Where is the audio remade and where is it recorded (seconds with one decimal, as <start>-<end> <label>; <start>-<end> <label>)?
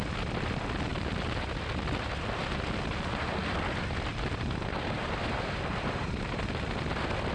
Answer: 0.0-6.0 recorded; 6.0-6.5 remade; 6.5-7.3 recorded